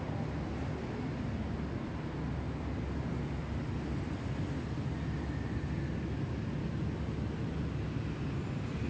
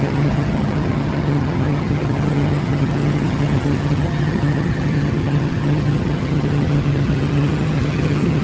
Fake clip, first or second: second